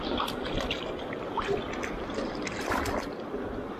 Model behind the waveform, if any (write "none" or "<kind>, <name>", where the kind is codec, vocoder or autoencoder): none